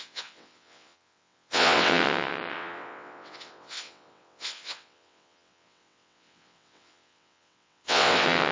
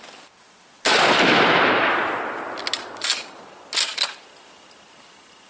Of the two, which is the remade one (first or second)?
first